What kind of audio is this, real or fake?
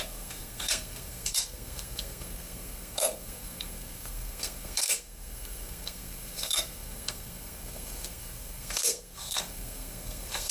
fake